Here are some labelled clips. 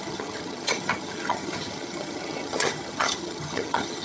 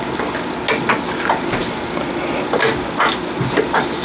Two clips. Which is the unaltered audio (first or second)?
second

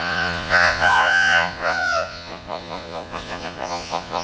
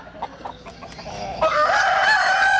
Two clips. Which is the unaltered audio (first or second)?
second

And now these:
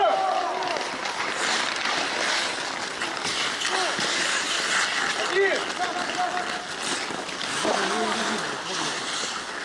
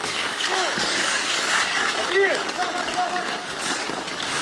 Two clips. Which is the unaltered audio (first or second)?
first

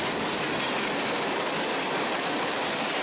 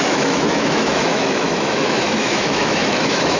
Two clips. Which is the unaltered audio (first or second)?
first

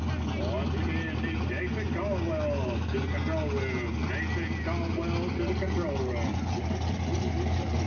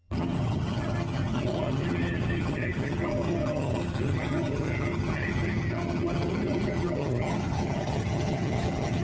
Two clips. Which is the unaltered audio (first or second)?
first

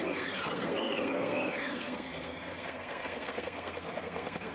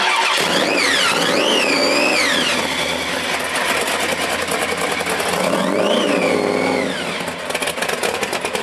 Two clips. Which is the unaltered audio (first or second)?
second